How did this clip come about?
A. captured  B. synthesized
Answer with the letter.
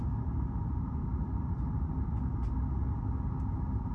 A